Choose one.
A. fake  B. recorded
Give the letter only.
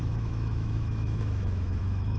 A